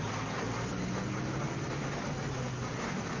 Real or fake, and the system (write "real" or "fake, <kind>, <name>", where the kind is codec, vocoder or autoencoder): real